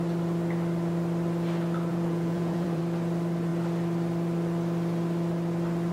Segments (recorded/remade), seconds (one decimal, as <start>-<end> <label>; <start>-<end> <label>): 0.0-1.9 recorded; 1.9-2.8 remade; 2.8-5.9 recorded